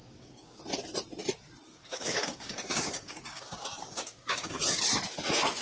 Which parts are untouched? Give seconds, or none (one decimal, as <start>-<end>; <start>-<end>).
0.6-1.7; 4.8-5.6